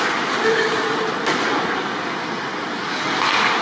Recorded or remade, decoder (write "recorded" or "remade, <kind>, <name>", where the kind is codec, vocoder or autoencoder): recorded